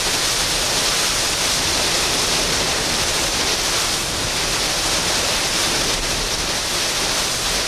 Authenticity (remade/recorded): recorded